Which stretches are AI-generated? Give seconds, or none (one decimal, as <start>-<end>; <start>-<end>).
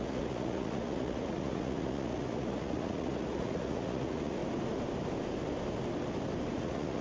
0.0-4.4; 6.5-7.0